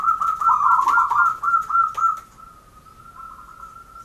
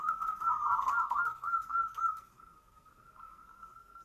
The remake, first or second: second